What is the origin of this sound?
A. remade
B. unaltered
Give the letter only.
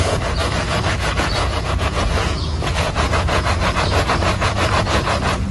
A